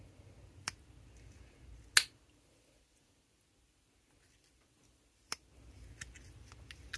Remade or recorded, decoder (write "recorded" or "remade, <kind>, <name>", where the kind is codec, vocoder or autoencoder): recorded